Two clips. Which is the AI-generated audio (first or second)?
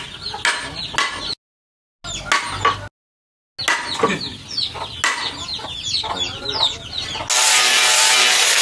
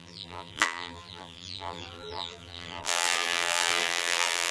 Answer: second